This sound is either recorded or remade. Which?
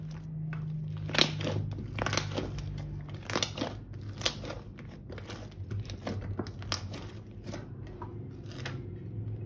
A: recorded